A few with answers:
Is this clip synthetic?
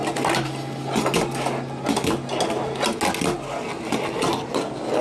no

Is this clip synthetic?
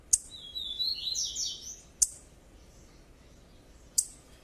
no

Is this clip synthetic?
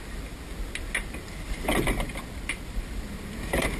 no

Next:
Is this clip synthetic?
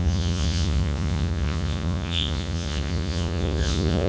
yes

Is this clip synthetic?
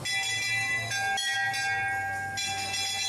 no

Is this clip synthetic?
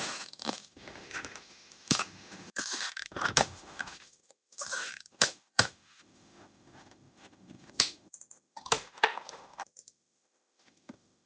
yes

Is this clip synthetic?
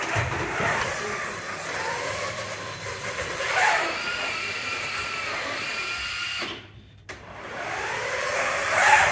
yes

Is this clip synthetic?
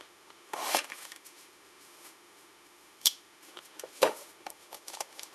yes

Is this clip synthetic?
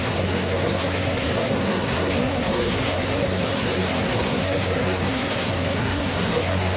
yes